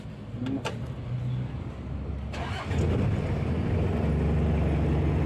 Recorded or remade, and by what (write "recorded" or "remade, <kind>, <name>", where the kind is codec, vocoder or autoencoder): recorded